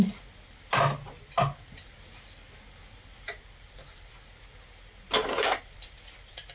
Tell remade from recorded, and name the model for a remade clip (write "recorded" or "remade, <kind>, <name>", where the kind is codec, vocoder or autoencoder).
recorded